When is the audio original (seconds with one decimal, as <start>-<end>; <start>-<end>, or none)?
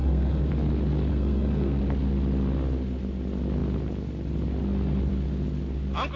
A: 0.5-1.1; 1.8-6.2